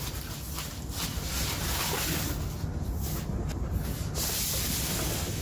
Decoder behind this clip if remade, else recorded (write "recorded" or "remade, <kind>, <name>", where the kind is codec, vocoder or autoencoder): recorded